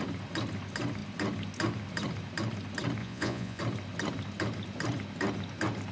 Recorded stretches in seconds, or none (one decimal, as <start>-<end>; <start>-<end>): 0.0-3.0; 3.6-5.9